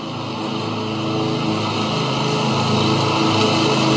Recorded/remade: recorded